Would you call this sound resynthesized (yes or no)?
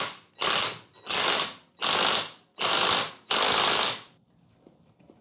no